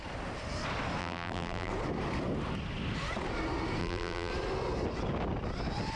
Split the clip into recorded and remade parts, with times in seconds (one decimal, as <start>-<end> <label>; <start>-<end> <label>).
0.0-1.0 recorded; 1.0-1.7 remade; 1.7-3.8 recorded; 3.8-4.3 remade; 4.3-6.0 recorded